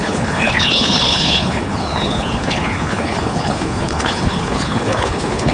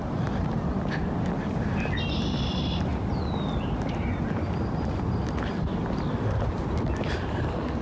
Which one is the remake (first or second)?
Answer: first